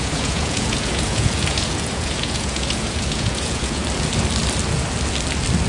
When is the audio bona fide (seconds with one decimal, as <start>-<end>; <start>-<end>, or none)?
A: 3.8-5.7